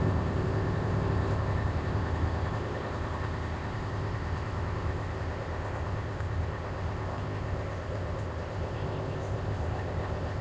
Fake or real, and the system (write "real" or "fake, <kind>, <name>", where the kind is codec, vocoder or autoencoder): fake, codec, ZipCodec